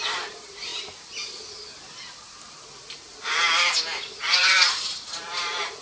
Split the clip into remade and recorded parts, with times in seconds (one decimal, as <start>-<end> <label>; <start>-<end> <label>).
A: 0.0-0.7 remade; 0.7-4.2 recorded; 4.2-5.8 remade